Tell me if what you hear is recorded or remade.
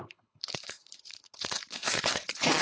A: remade